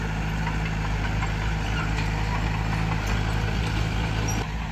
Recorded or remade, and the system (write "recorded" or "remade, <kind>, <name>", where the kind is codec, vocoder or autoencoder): recorded